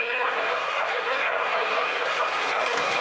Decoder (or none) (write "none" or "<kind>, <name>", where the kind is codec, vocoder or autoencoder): codec, SNAC